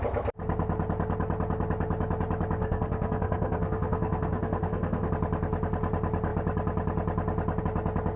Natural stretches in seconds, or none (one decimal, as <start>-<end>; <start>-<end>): 0.0-2.6; 5.1-8.2